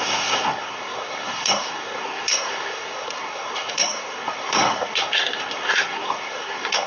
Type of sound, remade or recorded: remade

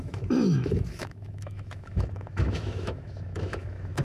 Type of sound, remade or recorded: remade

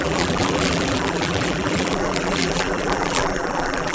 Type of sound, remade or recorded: remade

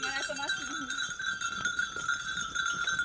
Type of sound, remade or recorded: recorded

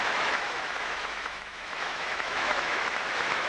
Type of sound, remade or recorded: remade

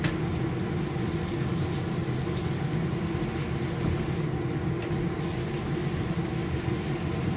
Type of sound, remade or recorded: recorded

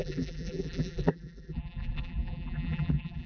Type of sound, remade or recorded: remade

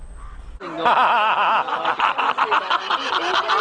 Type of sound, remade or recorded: recorded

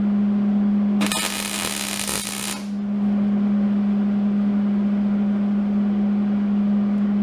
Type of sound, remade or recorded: recorded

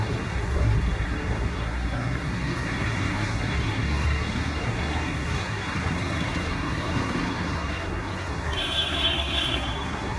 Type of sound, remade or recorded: remade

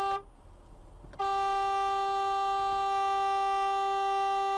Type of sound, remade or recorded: recorded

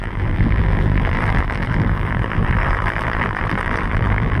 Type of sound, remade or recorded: remade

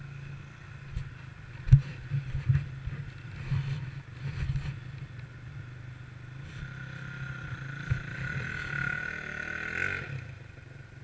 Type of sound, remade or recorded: recorded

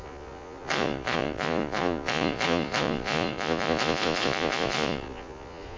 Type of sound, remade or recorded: remade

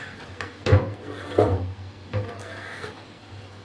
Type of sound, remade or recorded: remade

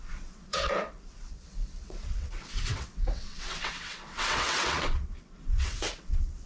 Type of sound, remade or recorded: remade